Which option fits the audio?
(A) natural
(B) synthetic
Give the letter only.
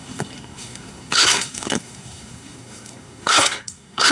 B